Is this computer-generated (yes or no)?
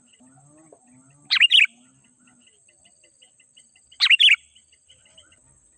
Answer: no